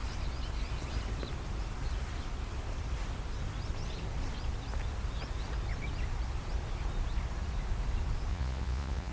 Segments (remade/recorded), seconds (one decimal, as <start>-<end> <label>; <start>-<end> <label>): 0.0-8.3 recorded; 8.3-9.1 remade